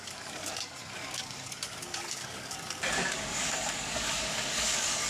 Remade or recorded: remade